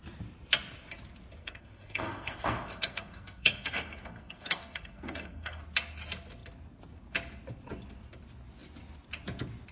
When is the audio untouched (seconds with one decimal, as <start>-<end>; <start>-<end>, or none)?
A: 0.0-1.4; 5.6-9.7